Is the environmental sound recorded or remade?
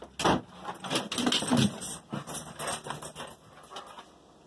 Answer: recorded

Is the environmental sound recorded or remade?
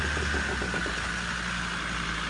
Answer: recorded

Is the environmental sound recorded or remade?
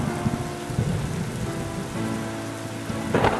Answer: recorded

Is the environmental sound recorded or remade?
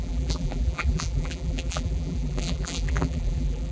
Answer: remade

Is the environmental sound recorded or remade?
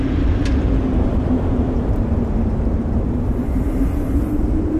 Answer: remade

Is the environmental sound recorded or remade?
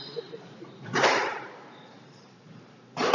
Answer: remade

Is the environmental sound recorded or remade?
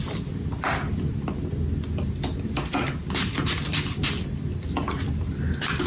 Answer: recorded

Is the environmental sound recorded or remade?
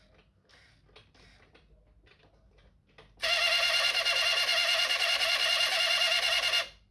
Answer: recorded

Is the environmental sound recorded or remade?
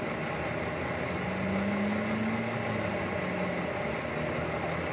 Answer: recorded